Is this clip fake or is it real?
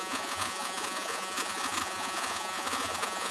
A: fake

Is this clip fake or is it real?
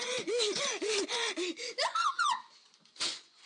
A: fake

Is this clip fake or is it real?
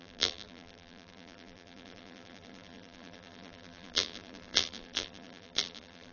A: fake